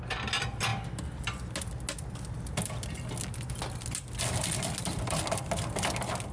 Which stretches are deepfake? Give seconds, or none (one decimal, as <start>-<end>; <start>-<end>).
none